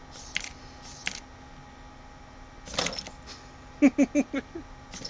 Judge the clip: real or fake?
real